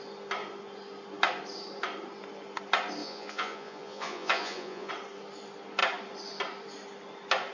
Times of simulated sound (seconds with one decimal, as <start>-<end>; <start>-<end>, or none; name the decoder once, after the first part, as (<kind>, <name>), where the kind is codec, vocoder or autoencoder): 3.0-4.9 (vocoder, Vocos)

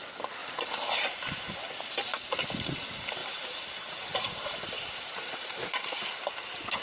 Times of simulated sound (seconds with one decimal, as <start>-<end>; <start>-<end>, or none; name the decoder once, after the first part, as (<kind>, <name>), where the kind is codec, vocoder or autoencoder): 3.2-6.1 (vocoder, BigVGAN v2)

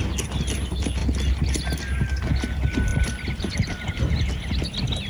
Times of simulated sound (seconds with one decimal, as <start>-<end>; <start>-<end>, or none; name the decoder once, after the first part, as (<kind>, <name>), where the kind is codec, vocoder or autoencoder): none

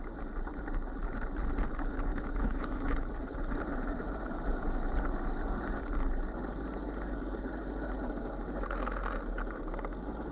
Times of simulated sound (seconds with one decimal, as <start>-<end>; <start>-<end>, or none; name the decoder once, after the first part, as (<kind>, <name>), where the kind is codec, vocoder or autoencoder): 2.1-3.2 (autoencoder, DAC-VAE)